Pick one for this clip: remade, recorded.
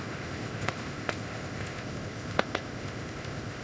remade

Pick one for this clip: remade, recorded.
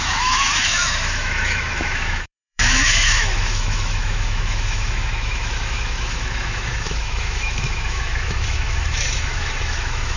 remade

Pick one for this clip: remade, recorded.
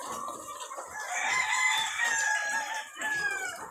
remade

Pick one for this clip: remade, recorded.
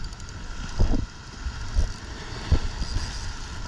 recorded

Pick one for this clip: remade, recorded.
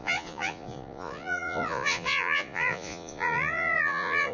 remade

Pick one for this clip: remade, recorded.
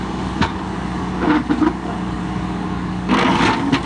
remade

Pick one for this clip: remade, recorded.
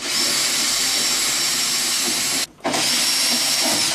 recorded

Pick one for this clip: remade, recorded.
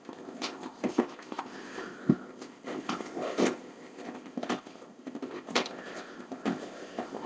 remade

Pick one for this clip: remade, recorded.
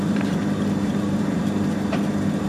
remade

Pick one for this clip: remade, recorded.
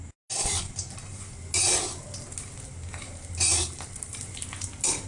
recorded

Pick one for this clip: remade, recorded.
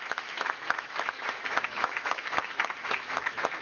remade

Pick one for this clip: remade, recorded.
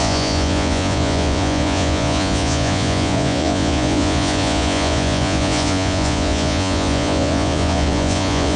remade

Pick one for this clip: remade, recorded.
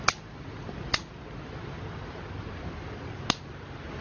recorded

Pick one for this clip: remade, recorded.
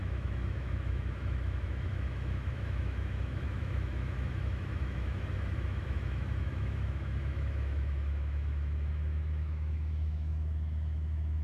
remade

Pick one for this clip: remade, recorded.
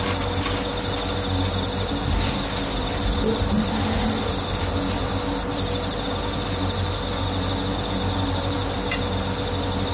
recorded